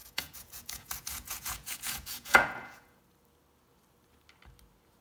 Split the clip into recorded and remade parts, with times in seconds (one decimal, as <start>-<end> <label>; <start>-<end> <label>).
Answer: 0.0-3.0 remade; 3.0-5.0 recorded